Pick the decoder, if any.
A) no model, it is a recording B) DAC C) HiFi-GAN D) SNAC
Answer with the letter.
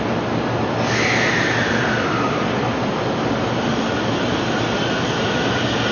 A